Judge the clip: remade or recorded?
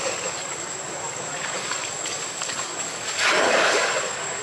remade